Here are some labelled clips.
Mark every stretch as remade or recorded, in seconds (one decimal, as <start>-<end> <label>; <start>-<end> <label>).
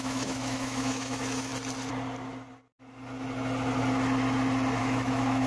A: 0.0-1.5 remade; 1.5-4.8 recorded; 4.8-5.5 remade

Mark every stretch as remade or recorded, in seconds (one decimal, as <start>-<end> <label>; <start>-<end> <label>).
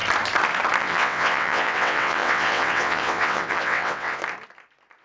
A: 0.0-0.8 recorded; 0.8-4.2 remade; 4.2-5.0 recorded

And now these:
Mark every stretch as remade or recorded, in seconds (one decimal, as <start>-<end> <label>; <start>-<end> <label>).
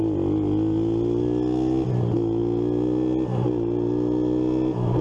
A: 0.0-5.0 recorded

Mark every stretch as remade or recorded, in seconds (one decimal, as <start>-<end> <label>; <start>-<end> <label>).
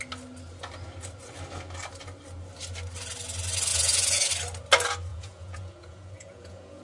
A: 0.0-3.7 recorded; 3.7-4.3 remade; 4.3-5.1 recorded; 5.1-6.8 remade